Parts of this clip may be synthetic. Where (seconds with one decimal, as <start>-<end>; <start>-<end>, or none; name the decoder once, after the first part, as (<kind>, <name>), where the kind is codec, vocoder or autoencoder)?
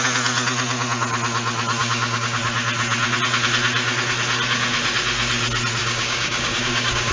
1.8-2.4 (codec, DAC); 5.8-7.1